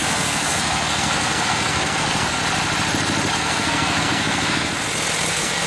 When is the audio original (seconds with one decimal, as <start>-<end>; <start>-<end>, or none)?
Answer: 2.4-3.3; 4.7-5.3